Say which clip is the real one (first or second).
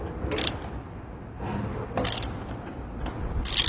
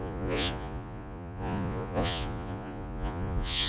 first